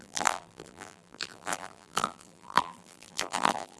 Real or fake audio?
fake